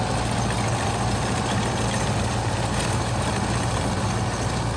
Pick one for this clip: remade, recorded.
recorded